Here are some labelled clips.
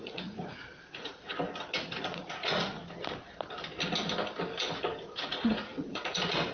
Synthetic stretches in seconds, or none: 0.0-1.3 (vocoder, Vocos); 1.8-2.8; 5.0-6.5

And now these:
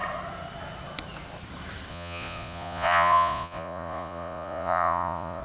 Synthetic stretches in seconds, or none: 1.9-5.4 (vocoder, Vocos)